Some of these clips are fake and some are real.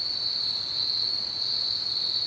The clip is real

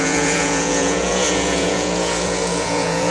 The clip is fake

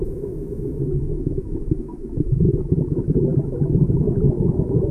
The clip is fake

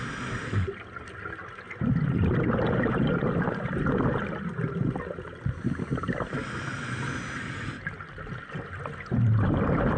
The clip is real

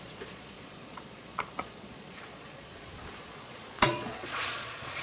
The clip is fake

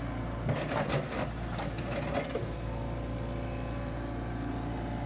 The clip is real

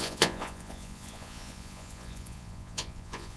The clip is fake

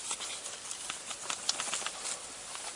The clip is real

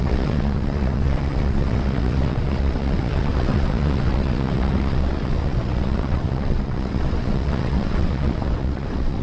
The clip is fake